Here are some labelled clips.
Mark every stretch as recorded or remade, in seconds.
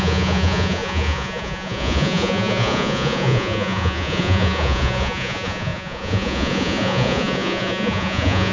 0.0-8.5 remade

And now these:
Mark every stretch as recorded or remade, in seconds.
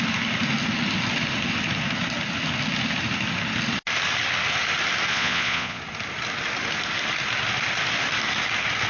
0.0-5.1 recorded; 5.1-5.8 remade; 5.8-8.9 recorded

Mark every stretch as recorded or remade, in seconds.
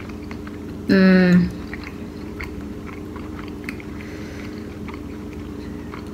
0.0-1.9 recorded; 1.9-5.6 remade; 5.6-6.1 recorded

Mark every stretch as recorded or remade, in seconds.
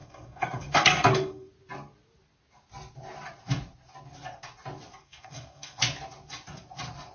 0.0-1.5 remade; 1.5-5.0 recorded; 5.0-5.8 remade; 5.8-7.1 recorded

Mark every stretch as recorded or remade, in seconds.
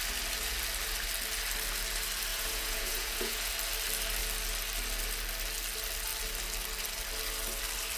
0.0-2.3 recorded; 2.3-3.5 remade; 3.5-8.0 recorded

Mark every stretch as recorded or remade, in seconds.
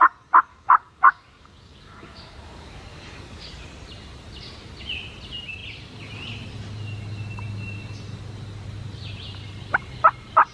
0.0-0.5 recorded; 0.5-3.5 remade; 3.5-10.5 recorded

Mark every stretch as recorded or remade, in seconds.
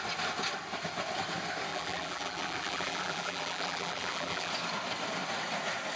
0.0-1.7 recorded; 1.7-4.5 remade; 4.5-6.0 recorded